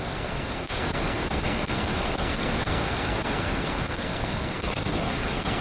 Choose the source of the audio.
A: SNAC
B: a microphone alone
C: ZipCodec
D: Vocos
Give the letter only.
A